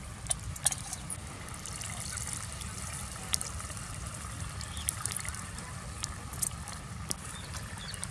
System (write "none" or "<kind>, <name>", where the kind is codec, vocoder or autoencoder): vocoder, BigVGAN v2